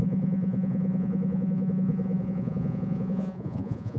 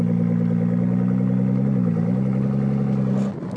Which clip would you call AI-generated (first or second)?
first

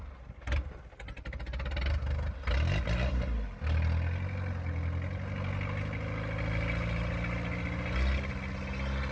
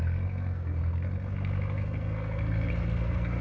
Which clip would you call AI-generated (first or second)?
second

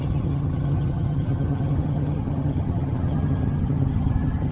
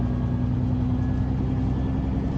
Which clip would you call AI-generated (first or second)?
first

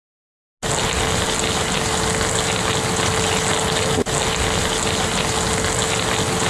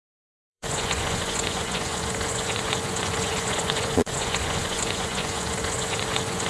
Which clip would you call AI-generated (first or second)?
second